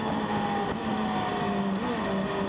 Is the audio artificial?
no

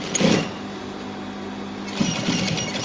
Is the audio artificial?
no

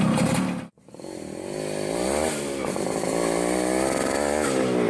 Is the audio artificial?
no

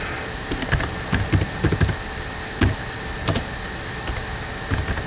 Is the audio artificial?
no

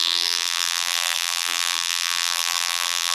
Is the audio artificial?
yes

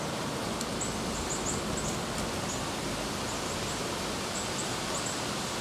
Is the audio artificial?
no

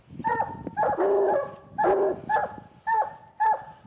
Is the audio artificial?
no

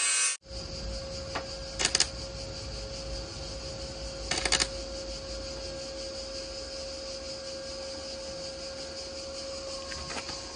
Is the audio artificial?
no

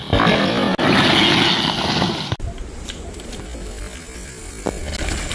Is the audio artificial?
no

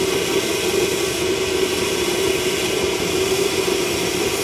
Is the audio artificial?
no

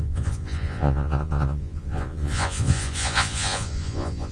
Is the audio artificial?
yes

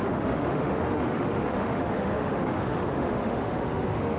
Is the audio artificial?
yes